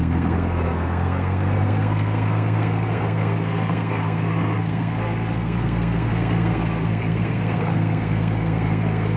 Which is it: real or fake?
fake